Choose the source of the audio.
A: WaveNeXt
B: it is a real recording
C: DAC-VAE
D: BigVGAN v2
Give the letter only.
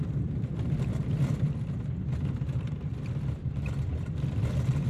D